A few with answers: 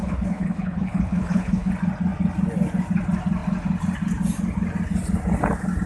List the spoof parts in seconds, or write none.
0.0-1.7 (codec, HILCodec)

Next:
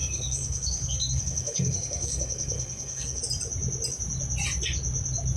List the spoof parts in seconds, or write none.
0.0-3.2 (codec, SNAC)

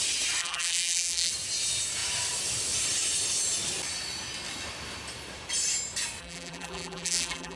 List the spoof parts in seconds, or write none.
0.4-1.3 (vocoder, BigVGAN v2); 6.2-7.6

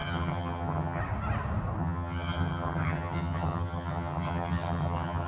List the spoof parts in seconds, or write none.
0.0-1.0 (vocoder, HiFi-GAN); 1.8-5.3